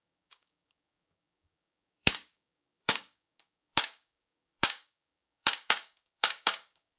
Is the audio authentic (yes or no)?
no